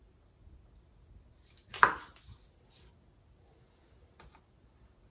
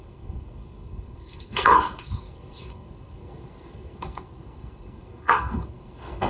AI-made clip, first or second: second